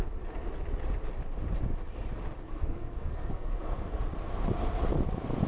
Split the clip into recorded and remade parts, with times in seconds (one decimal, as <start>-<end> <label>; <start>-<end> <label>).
0.0-2.4 recorded; 2.4-4.0 remade; 4.0-5.5 recorded